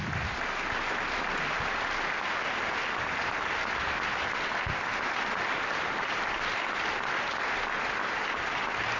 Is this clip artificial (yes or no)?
no